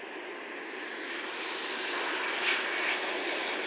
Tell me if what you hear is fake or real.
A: real